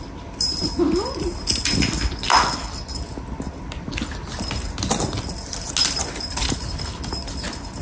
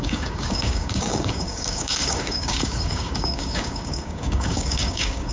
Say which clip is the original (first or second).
first